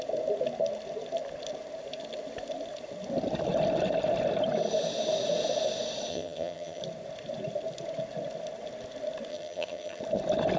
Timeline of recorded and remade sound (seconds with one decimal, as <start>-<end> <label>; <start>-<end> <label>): 0.0-6.1 recorded; 6.1-6.8 remade; 6.8-9.3 recorded; 9.3-10.0 remade; 10.0-10.6 recorded